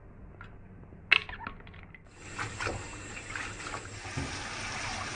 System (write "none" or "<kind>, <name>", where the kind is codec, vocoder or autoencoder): none